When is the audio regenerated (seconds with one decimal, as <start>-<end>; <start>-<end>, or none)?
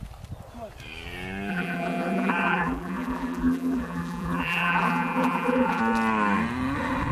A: 1.5-5.8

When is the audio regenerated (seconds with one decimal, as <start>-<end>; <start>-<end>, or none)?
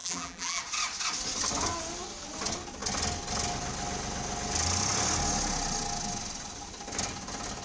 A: 0.0-0.6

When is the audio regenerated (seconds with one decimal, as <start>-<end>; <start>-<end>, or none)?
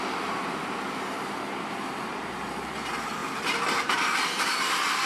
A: 0.0-5.1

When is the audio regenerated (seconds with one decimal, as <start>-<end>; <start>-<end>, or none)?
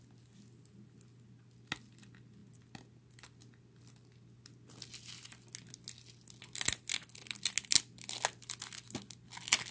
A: none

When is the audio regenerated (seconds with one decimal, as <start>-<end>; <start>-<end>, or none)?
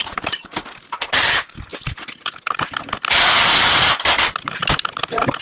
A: none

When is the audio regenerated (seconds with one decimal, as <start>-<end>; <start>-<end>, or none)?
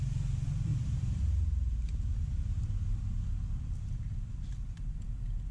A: 0.7-1.2; 2.1-5.5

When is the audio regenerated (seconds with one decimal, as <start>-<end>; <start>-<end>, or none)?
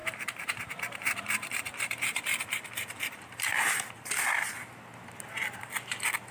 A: 0.0-3.8